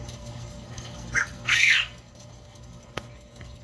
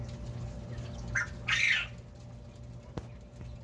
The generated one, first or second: first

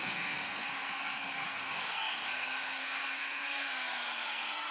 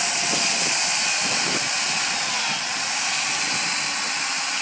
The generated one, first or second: first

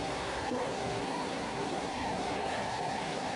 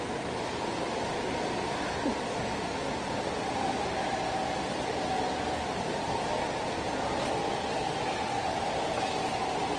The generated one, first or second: first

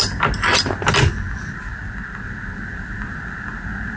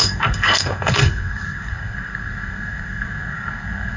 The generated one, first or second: second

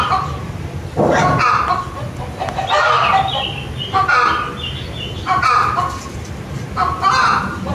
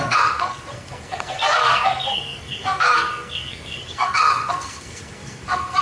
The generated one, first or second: second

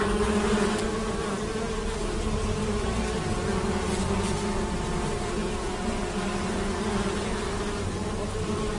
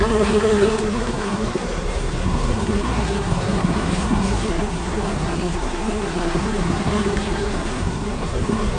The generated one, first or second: second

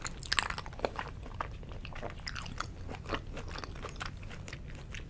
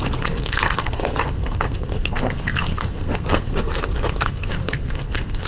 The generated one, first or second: second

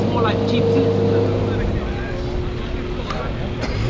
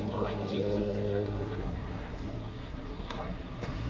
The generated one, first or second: second